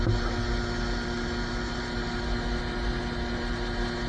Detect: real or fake real